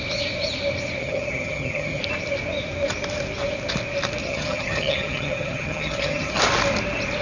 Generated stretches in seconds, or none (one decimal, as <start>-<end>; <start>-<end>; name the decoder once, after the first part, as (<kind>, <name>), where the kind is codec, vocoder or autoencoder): 1.0-2.0 (vocoder, HiFi-GAN); 4.2-6.4